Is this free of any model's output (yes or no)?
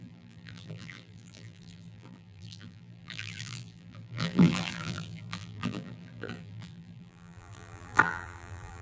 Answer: no